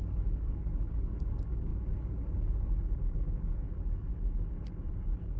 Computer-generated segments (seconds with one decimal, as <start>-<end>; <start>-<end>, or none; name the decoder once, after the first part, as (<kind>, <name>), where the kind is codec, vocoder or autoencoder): 0.0-4.1 (codec, DAC); 4.9-5.4